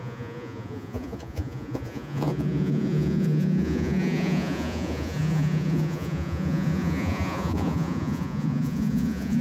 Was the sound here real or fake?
fake